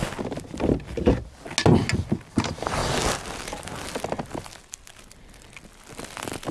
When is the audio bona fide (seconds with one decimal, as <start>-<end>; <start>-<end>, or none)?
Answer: 0.0-6.5